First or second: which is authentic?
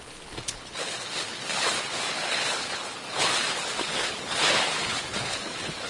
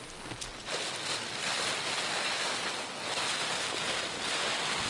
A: second